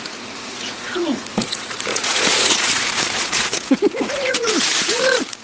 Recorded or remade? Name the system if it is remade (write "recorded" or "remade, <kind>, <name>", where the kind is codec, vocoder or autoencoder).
remade, vocoder, Vocos